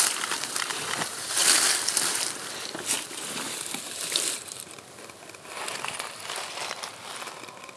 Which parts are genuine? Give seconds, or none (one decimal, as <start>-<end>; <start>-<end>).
0.0-1.4; 5.0-7.8